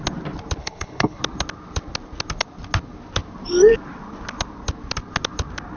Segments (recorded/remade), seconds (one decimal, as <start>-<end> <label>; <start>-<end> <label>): 0.0-0.6 recorded; 0.6-1.2 remade; 1.2-5.8 recorded